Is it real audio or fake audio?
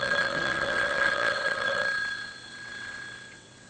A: fake